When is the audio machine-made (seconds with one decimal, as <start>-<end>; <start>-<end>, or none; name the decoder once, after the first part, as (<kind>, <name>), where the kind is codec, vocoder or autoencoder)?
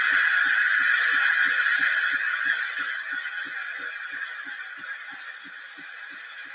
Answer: none